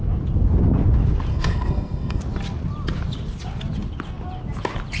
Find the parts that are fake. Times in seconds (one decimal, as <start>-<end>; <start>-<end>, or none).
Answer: 1.3-2.2